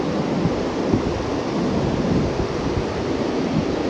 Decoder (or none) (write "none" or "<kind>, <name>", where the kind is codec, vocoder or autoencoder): none